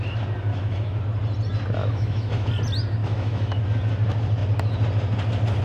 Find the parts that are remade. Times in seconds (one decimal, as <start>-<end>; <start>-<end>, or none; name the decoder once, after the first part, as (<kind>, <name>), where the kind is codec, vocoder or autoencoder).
0.5-1.0 (autoencoder, DAC-VAE); 1.8-2.5; 3.0-3.6